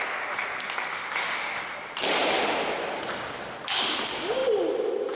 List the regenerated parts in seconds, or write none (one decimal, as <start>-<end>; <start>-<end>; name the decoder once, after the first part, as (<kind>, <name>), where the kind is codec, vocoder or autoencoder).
0.9-1.6 (autoencoder, DAC-VAE)